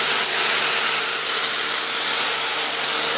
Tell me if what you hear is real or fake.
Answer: real